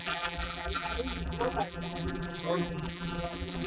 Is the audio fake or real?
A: fake